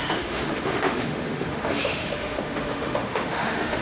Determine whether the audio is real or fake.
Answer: fake